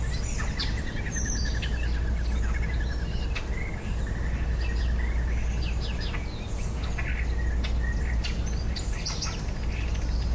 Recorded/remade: recorded